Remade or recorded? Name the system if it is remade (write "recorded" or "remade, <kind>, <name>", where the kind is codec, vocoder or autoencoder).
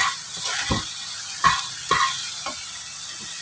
recorded